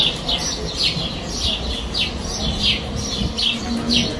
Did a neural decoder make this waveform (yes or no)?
no